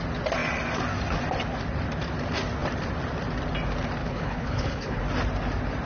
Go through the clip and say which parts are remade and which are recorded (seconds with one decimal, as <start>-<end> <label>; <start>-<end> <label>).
0.0-4.0 recorded; 4.0-5.0 remade; 5.0-5.9 recorded

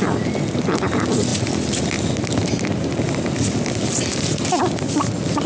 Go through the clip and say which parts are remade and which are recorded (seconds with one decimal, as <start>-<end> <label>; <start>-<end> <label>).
0.0-5.5 recorded

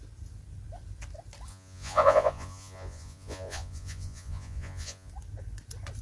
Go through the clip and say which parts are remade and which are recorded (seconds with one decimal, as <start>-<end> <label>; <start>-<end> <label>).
0.0-1.5 recorded; 1.5-5.1 remade; 5.1-6.0 recorded

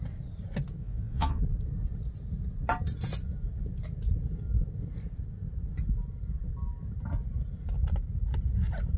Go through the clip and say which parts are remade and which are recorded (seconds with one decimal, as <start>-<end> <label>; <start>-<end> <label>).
0.0-0.8 recorded; 0.8-1.4 remade; 1.4-9.0 recorded

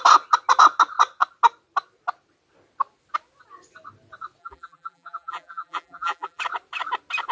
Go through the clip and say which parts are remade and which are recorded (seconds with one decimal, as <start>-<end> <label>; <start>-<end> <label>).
0.0-4.4 recorded; 4.4-6.4 remade; 6.4-7.3 recorded